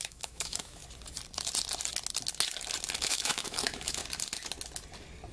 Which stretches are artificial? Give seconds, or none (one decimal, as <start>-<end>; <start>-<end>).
0.0-0.8; 3.0-4.0